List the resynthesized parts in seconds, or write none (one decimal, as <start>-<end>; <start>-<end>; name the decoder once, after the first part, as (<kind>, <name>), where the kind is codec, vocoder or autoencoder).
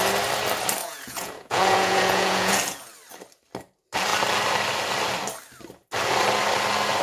0.8-2.5 (vocoder, Vocos)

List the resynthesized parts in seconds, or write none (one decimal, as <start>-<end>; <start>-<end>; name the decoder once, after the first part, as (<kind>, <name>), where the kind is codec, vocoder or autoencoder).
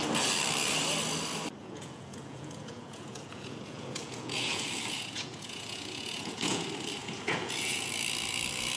1.6-6.6 (vocoder, Vocos); 7.0-7.9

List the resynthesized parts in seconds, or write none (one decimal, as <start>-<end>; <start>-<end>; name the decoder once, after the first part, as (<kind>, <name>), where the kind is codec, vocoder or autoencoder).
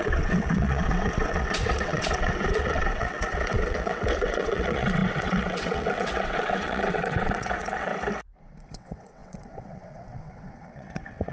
0.0-7.9 (vocoder, WaveNeXt); 8.7-11.3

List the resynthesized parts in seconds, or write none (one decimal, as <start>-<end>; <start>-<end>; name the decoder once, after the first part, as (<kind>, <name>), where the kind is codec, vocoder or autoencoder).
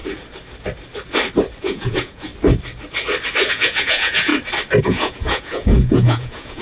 1.6-2.3 (vocoder, Vocos); 3.5-4.3; 4.8-6.6